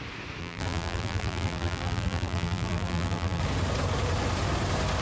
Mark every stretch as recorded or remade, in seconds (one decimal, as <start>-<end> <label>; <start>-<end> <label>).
0.0-0.4 recorded; 0.4-3.4 remade; 3.4-5.0 recorded

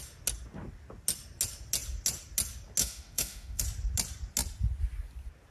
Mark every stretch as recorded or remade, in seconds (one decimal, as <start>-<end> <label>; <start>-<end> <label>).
0.0-2.8 recorded; 2.8-3.6 remade; 3.6-5.5 recorded